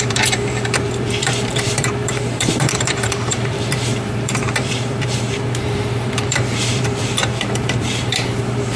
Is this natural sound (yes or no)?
no